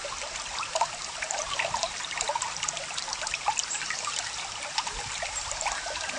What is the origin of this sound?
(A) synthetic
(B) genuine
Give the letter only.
B